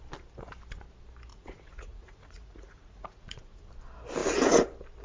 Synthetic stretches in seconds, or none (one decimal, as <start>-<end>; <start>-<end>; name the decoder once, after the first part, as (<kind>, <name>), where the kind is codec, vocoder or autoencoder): 1.3-3.7 (vocoder, Vocos)